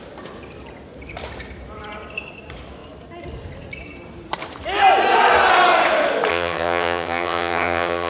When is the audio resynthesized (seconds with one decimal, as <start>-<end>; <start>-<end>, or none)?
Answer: 6.3-8.1